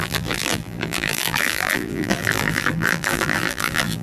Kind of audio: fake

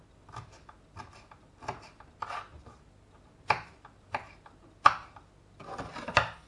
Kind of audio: real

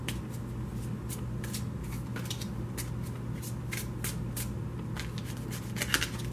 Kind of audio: real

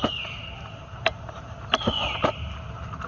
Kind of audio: real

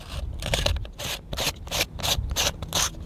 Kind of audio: real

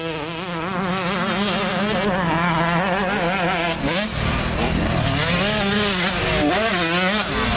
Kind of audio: real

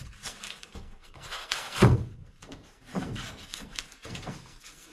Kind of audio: fake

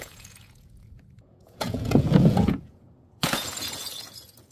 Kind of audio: fake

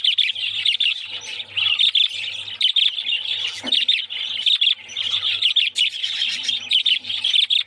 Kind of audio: real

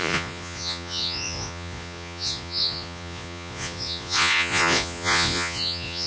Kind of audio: fake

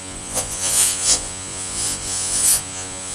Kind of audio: fake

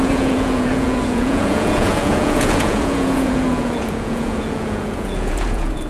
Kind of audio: fake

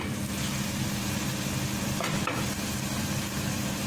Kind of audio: real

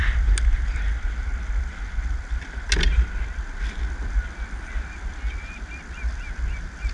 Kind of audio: real